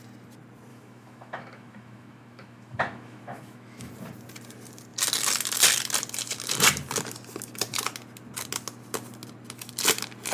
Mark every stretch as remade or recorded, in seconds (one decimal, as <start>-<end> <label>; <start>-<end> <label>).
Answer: 0.0-0.7 recorded; 0.7-3.9 remade; 3.9-10.3 recorded